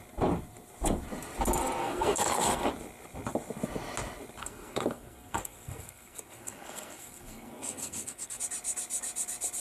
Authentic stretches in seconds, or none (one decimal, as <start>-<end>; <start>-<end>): 0.0-1.8; 2.7-4.4; 8.4-9.6